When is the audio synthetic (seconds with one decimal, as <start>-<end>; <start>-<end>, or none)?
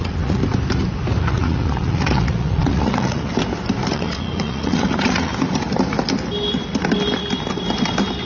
0.0-0.4; 1.2-3.3; 3.9-5.3